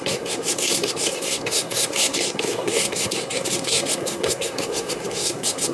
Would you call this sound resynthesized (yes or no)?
yes